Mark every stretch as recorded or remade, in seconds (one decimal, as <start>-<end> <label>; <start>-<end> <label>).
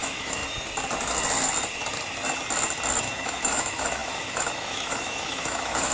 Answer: 0.0-0.4 remade; 0.4-3.0 recorded; 3.0-5.9 remade